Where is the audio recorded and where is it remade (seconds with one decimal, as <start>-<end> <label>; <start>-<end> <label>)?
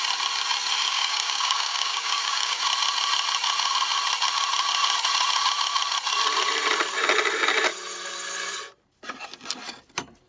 0.0-0.9 recorded; 0.9-2.6 remade; 2.6-10.3 recorded